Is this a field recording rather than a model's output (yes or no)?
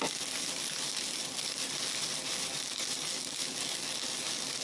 yes